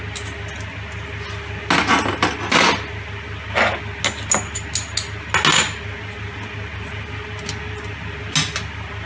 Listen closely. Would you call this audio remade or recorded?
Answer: recorded